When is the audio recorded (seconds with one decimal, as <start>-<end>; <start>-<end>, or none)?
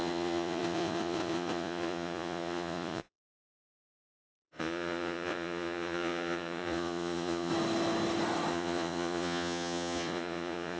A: 7.5-8.5